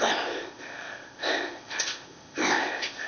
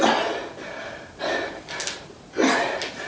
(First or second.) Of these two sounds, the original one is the second